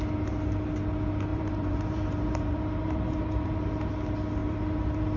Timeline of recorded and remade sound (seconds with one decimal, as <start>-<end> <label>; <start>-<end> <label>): 0.0-1.3 recorded; 1.3-3.9 remade; 3.9-4.4 recorded; 4.4-5.2 remade